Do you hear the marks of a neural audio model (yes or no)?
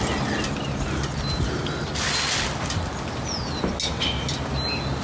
no